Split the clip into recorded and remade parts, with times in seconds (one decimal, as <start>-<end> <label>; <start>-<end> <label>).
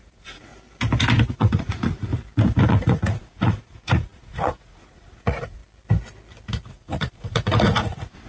0.0-0.5 remade; 0.5-1.3 recorded; 1.3-2.1 remade; 2.1-2.6 recorded; 2.6-5.6 remade; 5.6-6.7 recorded; 6.7-8.3 remade